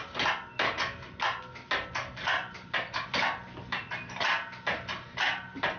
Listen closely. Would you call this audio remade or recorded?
recorded